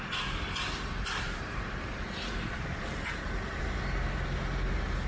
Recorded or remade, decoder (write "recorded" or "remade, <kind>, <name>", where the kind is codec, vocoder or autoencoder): remade, vocoder, BigVGAN v2